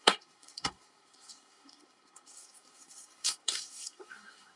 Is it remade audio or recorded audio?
remade